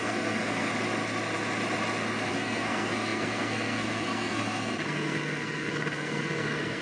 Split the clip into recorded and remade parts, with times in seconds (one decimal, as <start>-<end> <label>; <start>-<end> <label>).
0.0-0.7 remade; 0.7-2.3 recorded; 2.3-6.8 remade